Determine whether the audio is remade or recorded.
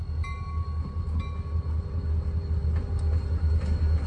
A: recorded